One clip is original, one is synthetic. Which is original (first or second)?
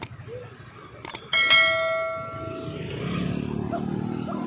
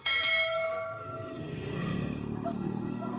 first